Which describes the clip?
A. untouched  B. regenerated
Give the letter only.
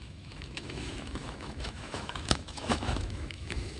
B